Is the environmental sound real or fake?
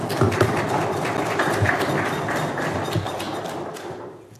real